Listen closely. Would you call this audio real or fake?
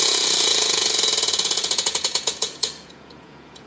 fake